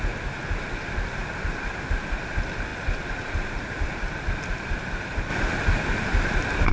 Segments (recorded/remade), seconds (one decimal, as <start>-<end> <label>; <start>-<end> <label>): 0.0-1.2 recorded; 1.2-1.7 remade; 1.7-2.7 recorded; 2.7-4.7 remade; 4.7-5.3 recorded; 5.3-6.7 remade